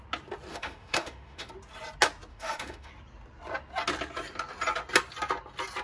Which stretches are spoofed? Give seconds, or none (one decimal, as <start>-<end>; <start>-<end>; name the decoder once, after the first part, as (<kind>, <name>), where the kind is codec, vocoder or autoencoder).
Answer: 0.5-1.5 (autoencoder, DAC-VAE); 2.3-2.9